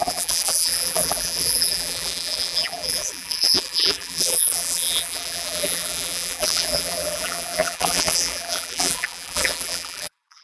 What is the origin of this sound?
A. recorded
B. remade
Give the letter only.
B